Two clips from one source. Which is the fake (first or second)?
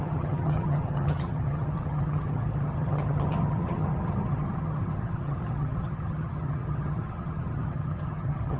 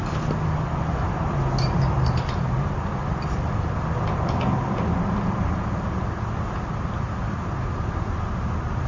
first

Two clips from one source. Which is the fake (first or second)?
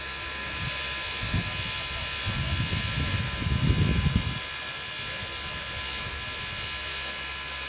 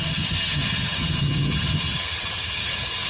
second